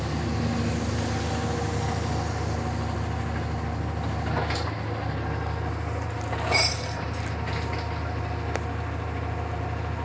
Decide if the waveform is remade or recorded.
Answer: recorded